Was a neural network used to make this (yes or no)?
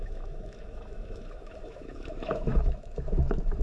yes